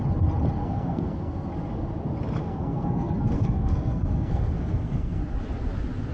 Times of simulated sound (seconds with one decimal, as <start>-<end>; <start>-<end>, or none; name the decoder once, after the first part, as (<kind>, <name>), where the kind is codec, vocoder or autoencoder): 0.6-1.5 (codec, SNAC); 2.4-5.2